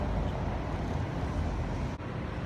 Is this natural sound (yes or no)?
yes